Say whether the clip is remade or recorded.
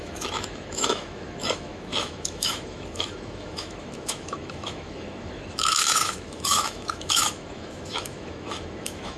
remade